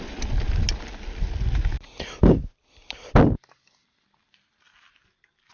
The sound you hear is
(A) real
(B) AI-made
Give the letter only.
A